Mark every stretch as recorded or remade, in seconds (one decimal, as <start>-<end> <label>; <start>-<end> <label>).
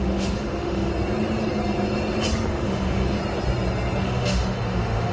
0.0-0.9 remade; 0.9-2.5 recorded; 2.5-3.2 remade; 3.2-4.0 recorded; 4.0-5.1 remade